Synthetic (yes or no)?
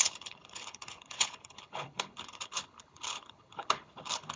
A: yes